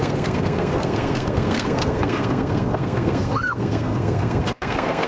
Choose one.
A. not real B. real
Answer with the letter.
A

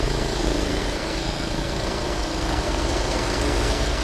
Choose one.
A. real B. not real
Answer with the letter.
B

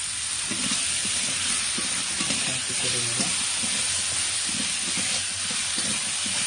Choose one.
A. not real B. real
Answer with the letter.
B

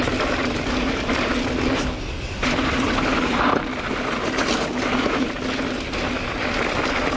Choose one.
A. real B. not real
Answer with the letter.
A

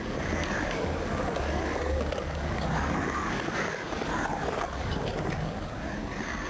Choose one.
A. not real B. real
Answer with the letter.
A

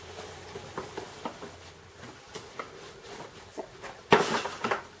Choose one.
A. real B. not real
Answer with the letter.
A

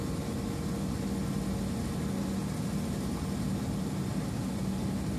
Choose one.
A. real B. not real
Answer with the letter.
A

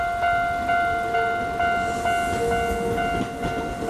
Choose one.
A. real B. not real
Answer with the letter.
A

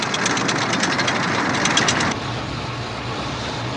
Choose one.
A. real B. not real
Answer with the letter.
A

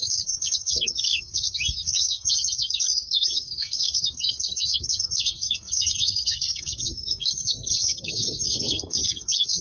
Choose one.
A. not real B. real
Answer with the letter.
A